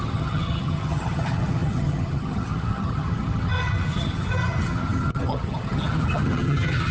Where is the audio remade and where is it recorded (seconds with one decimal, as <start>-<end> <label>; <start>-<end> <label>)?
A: 0.0-6.9 remade